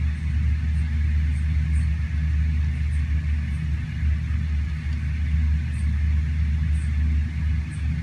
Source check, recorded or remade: recorded